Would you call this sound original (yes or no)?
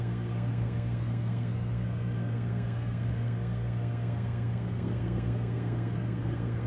no